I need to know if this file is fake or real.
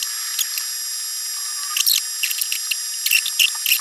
real